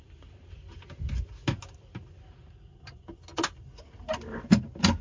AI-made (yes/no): no